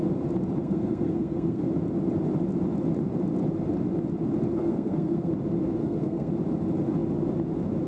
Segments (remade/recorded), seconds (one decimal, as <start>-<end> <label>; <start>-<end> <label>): 0.0-0.6 recorded; 0.6-1.7 remade; 1.7-4.5 recorded; 4.5-5.3 remade; 5.3-5.8 recorded; 5.8-6.3 remade; 6.3-7.9 recorded

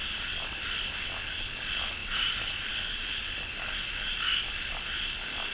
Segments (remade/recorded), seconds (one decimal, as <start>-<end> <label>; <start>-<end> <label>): 0.0-2.0 recorded; 2.0-2.7 remade; 2.7-5.5 recorded